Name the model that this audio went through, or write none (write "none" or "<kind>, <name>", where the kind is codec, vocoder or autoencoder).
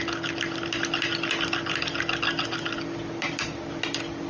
none